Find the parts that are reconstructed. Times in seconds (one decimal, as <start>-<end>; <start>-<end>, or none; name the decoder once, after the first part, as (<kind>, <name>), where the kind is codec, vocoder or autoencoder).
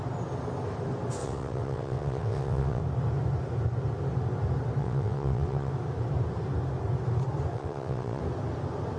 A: 1.2-2.8 (vocoder, WaveNeXt); 4.8-5.7; 7.5-8.2